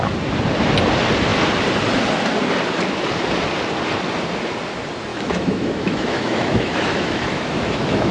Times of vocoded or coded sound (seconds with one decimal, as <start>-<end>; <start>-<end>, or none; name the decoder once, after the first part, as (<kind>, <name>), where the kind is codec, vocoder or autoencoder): 5.1-8.1 (autoencoder, DAC-VAE)